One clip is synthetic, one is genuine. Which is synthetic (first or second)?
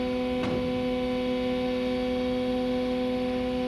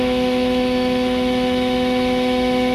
second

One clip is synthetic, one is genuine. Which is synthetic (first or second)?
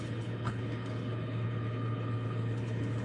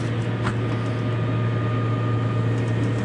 first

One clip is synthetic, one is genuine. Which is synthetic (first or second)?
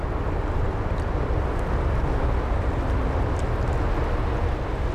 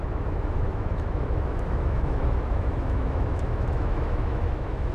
second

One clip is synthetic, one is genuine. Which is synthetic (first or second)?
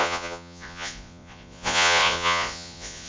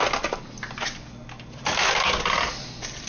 first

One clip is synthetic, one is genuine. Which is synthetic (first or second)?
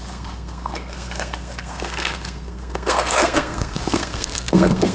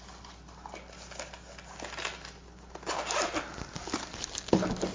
first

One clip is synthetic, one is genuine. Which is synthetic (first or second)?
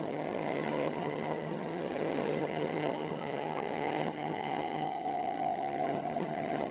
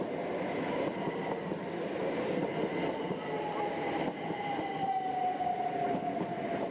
first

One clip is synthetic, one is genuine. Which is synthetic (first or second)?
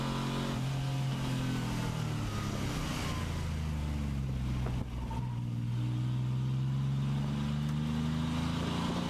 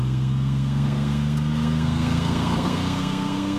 second